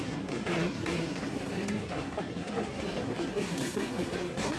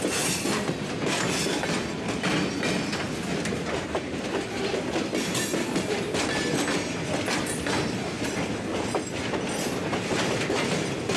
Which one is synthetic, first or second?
first